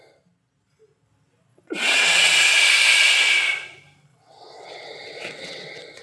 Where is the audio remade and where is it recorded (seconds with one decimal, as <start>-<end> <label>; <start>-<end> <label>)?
0.0-1.5 recorded; 1.5-2.3 remade; 2.3-4.1 recorded; 4.1-6.0 remade